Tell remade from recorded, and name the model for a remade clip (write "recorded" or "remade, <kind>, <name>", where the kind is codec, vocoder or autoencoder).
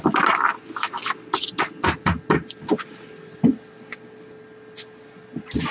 recorded